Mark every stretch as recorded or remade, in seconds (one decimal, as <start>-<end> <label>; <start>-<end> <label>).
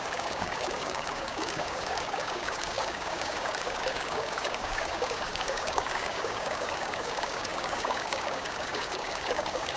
0.0-9.8 remade